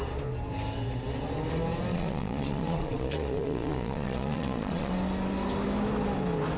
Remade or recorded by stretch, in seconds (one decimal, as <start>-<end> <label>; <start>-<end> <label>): 0.0-1.9 recorded; 1.9-4.9 remade; 4.9-6.6 recorded